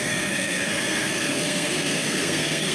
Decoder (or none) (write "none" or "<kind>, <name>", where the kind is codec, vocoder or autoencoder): codec, SNAC